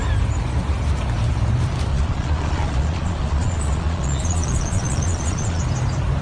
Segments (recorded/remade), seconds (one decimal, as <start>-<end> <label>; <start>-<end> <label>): 0.0-1.9 recorded; 1.9-5.6 remade; 5.6-6.2 recorded